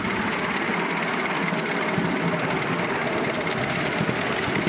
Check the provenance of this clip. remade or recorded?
recorded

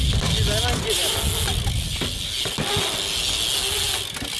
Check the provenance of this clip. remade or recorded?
recorded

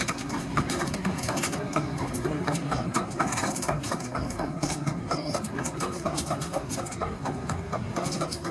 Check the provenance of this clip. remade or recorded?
remade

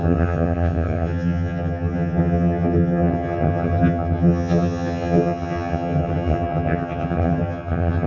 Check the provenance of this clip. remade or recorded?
remade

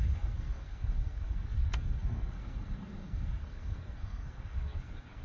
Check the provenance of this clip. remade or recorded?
remade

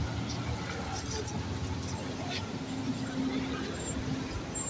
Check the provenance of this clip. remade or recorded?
recorded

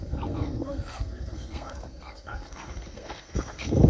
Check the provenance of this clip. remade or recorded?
remade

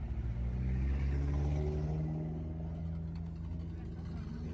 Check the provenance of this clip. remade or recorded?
recorded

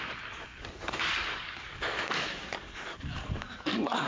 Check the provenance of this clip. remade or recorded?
remade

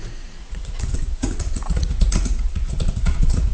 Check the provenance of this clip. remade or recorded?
remade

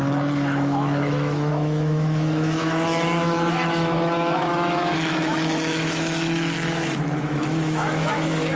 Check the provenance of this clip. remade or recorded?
remade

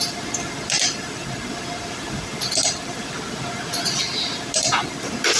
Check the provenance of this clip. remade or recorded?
recorded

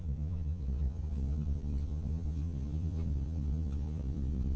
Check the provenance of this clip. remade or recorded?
remade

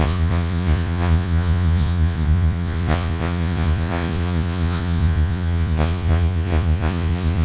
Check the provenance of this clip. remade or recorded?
remade